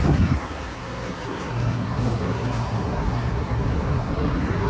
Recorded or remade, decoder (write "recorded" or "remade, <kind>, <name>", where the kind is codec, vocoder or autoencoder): remade, codec, SNAC